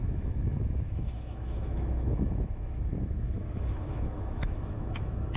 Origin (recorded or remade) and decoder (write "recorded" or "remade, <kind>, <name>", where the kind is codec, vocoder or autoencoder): remade, autoencoder, DAC-VAE